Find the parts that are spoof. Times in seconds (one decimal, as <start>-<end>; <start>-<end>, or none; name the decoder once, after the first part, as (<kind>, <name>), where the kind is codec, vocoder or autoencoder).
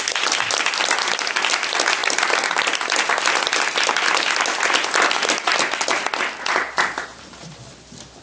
none